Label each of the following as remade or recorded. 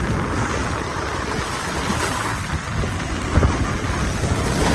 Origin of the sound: recorded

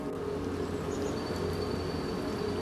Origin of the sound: recorded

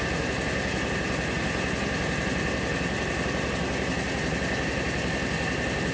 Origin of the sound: recorded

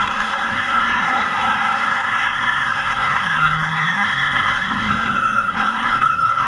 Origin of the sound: remade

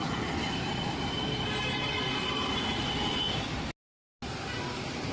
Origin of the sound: recorded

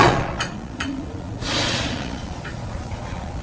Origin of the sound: remade